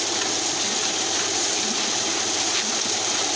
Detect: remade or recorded remade